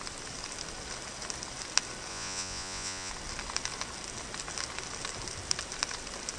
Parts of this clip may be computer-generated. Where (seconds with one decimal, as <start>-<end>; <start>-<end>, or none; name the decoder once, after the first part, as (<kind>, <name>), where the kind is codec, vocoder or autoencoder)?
2.1-3.1 (vocoder, Vocos)